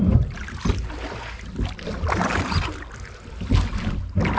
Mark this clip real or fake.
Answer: real